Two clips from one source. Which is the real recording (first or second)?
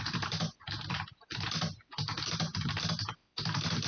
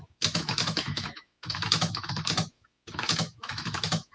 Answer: first